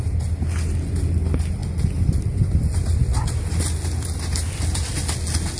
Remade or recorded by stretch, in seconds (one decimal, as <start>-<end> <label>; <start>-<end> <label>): 0.0-5.6 recorded